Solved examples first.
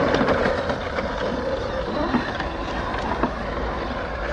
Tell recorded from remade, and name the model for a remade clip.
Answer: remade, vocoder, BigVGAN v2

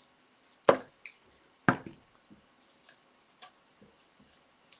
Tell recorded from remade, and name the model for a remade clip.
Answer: recorded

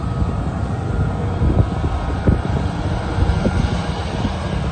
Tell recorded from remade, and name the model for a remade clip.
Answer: recorded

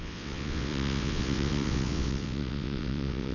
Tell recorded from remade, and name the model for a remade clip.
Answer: remade, vocoder, WaveNeXt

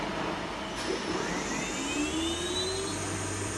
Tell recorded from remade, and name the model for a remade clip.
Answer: recorded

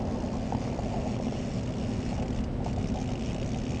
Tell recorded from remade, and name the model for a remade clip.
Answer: recorded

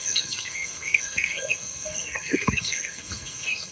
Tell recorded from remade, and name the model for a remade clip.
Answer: remade, codec, SNAC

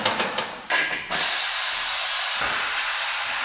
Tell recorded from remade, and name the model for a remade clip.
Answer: recorded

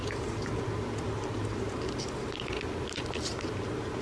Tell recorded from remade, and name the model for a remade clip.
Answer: recorded